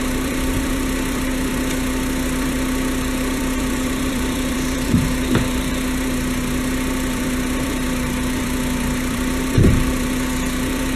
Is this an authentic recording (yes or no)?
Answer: no